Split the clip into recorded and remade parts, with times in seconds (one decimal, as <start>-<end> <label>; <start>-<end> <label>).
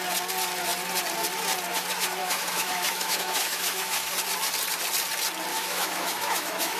0.0-2.2 recorded; 2.2-4.1 remade; 4.1-5.5 recorded; 5.5-6.8 remade